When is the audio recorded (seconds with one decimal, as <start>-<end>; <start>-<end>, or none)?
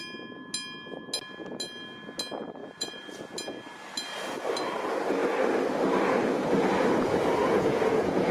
0.0-2.6; 3.1-7.4